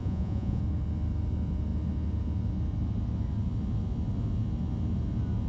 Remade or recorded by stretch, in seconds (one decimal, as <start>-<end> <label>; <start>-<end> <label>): 0.0-0.6 remade; 0.6-5.5 recorded